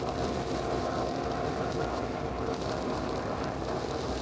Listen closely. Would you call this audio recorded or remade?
recorded